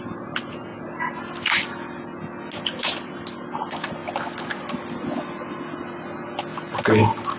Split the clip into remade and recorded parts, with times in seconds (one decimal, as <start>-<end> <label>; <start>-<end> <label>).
0.0-0.7 remade; 0.7-2.6 recorded; 2.6-4.0 remade; 4.0-7.4 recorded